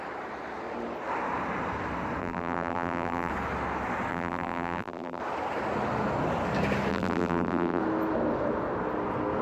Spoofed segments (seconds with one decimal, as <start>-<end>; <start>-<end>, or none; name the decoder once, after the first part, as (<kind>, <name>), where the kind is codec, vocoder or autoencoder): 2.2-3.3 (vocoder, BigVGAN v2); 4.1-5.2; 6.9-7.8